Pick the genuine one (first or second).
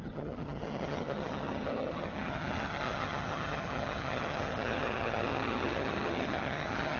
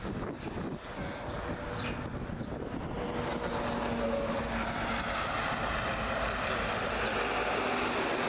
second